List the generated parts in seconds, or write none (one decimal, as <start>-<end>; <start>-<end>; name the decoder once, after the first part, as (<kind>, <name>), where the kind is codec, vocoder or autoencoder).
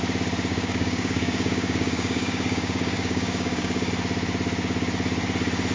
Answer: 0.5-3.9 (codec, DAC)